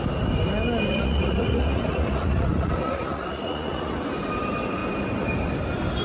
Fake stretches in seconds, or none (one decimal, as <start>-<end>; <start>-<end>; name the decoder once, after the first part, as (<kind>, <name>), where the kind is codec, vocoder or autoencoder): 0.9-4.0 (vocoder, Vocos)